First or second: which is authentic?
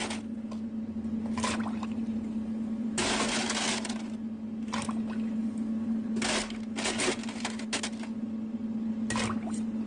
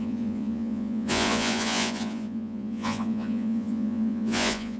first